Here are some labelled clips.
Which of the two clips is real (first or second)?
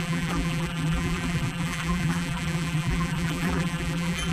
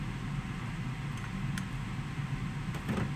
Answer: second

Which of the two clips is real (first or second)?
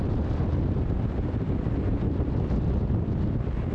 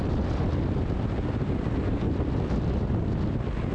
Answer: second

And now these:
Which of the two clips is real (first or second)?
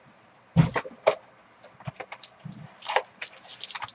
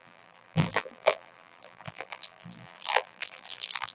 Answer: first